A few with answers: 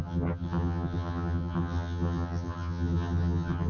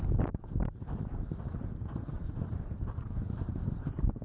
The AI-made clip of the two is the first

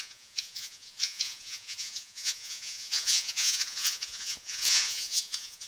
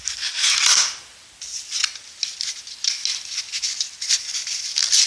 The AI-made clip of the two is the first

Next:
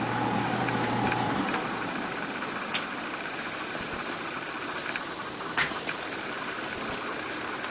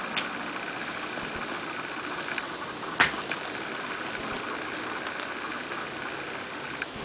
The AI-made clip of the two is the first